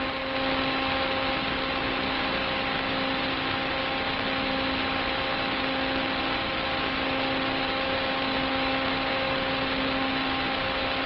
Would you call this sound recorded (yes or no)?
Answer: yes